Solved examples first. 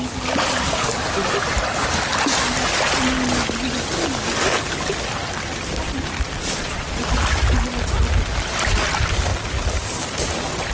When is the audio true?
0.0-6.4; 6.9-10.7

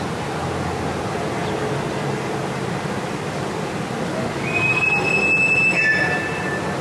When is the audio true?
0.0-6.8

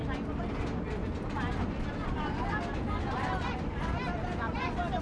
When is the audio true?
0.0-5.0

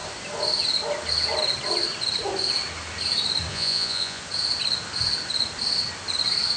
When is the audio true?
0.0-3.5; 4.2-6.6

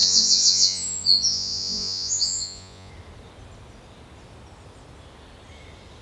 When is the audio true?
2.9-6.0

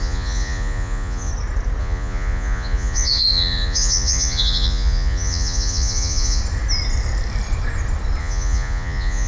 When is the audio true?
1.3-1.8; 6.4-8.2